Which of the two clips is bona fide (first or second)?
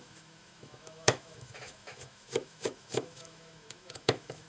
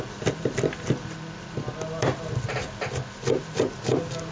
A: second